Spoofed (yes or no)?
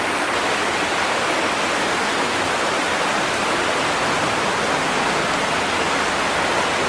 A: no